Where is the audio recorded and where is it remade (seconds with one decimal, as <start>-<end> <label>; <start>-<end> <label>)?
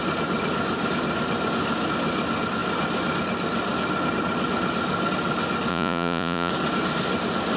0.0-5.7 recorded; 5.7-6.5 remade; 6.5-7.6 recorded